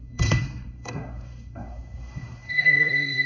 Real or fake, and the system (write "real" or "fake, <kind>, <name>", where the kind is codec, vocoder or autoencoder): fake, codec, SNAC